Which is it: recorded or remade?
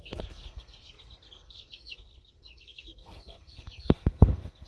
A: remade